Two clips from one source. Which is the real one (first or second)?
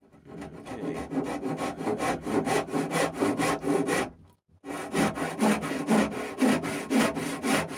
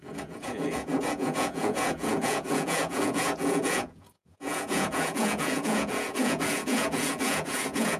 first